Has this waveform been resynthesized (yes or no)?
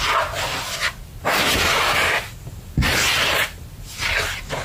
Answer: no